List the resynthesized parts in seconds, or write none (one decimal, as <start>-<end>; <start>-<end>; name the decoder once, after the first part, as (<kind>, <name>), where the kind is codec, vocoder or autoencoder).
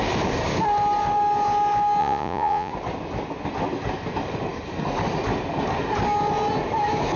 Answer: 2.0-2.7 (vocoder, Vocos)